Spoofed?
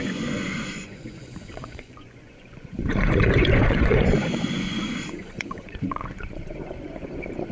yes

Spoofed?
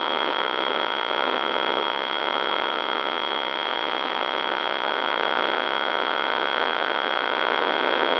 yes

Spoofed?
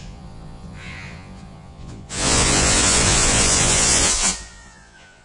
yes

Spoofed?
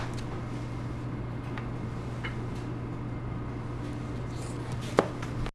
no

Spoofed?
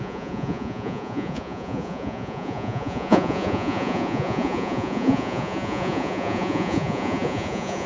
yes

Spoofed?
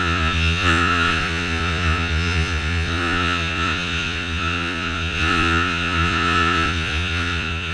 yes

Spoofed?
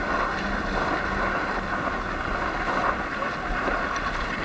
no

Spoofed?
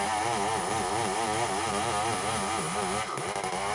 no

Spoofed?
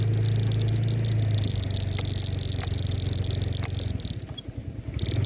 no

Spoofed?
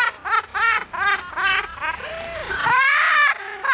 no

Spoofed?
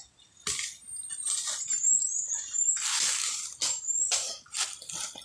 no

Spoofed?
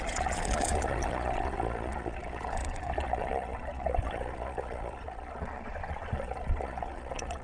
yes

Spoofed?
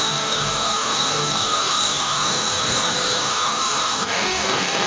yes